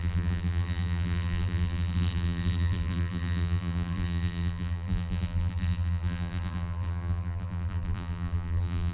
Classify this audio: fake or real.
fake